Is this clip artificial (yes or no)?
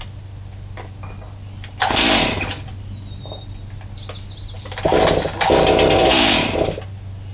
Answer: no